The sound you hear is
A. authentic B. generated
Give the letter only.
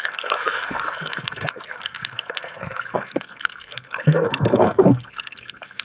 B